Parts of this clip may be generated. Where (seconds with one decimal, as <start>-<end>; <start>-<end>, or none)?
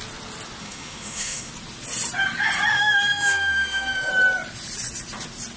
0.6-1.5; 2.7-4.1